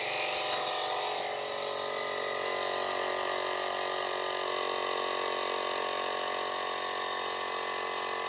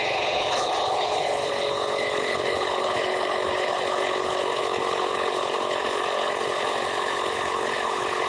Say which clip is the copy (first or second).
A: second